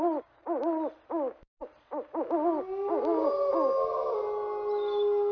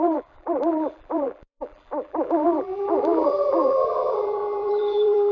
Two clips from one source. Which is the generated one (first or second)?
second